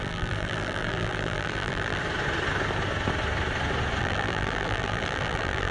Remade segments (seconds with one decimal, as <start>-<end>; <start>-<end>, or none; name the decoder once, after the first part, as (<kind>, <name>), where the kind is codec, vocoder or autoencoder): 0.0-2.0 (vocoder, BigVGAN v2); 4.0-5.7